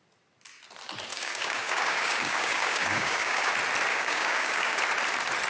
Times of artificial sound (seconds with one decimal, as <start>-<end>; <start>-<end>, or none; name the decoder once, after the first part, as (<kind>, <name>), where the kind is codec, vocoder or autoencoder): 1.1-3.5 (codec, DAC); 3.9-4.8